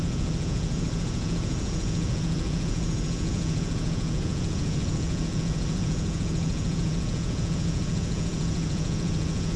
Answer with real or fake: fake